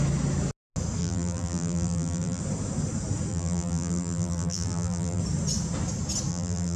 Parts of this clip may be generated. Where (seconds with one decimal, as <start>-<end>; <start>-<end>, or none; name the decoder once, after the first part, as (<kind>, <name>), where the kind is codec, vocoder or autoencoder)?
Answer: 1.0-2.4 (vocoder, BigVGAN v2); 3.3-5.2; 6.3-6.8